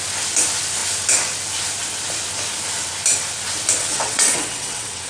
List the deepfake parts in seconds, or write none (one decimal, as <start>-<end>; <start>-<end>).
3.8-5.1